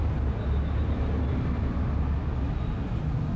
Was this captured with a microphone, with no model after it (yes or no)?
yes